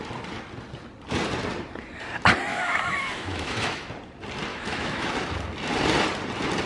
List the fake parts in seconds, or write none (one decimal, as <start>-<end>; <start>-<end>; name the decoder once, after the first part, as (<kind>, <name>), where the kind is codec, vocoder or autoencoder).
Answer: 2.5-3.9 (autoencoder, DAC-VAE); 4.5-5.1